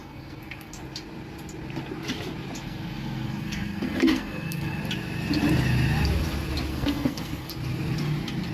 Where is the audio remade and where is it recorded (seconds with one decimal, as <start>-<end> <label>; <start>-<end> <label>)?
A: 0.0-0.8 remade; 0.8-2.6 recorded; 2.6-4.8 remade; 4.8-6.7 recorded; 6.7-7.5 remade; 7.5-8.5 recorded

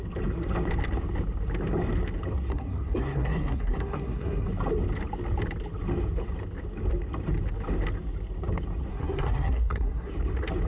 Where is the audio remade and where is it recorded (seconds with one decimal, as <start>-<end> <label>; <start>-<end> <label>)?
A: 0.0-2.5 recorded; 2.5-4.5 remade; 4.5-8.9 recorded; 8.9-10.1 remade; 10.1-10.7 recorded